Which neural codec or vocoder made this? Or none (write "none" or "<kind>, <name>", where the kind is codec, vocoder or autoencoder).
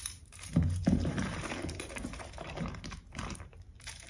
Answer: vocoder, BigVGAN v2